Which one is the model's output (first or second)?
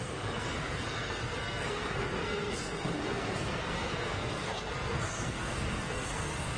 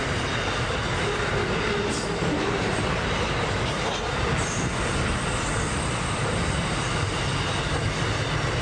first